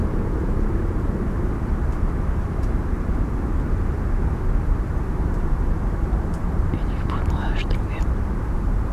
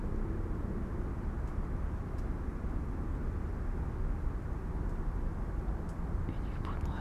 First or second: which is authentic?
second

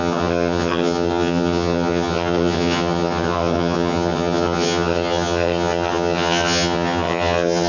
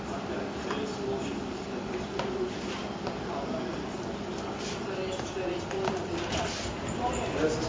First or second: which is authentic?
second